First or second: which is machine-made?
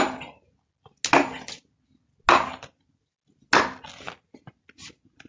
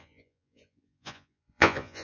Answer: second